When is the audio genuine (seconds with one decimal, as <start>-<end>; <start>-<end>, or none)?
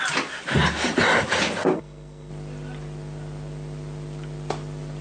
0.0-1.7; 2.3-5.0